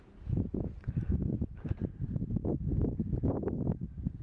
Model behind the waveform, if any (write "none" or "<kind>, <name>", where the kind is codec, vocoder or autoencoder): none